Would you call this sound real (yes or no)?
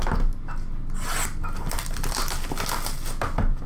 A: yes